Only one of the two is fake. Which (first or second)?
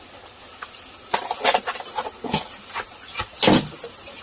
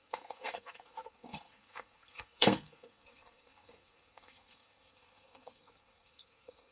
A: second